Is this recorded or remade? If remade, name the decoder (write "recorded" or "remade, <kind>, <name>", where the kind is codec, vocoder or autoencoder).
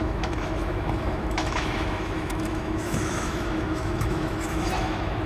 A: remade, autoencoder, DAC-VAE